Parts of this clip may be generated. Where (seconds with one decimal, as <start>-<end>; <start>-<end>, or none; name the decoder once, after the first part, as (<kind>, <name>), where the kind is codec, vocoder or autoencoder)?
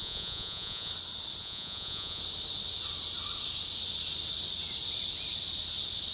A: 0.0-0.9 (vocoder, Vocos); 1.4-2.2